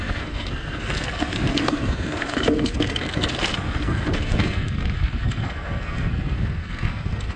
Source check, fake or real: fake